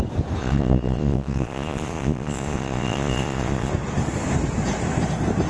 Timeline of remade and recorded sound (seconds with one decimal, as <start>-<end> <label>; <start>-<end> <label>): 0.0-0.4 recorded; 0.4-3.7 remade; 3.7-5.5 recorded